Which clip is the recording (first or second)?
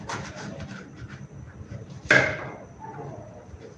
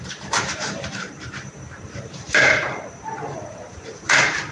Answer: first